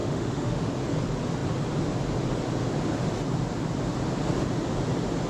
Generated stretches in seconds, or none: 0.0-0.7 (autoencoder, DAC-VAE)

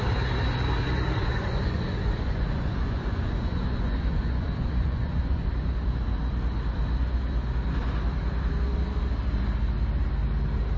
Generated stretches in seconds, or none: 1.2-5.5 (vocoder, Vocos)

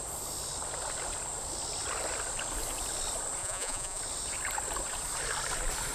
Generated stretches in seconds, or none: 3.4-4.0 (vocoder, Vocos)